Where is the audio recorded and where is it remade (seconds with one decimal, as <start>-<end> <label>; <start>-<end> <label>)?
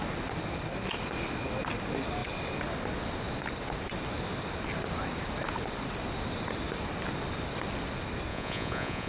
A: 0.0-8.3 recorded; 8.3-9.1 remade